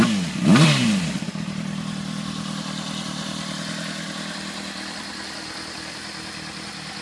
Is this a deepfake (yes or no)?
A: no